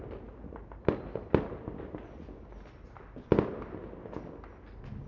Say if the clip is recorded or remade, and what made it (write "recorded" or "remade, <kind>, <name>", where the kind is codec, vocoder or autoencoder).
recorded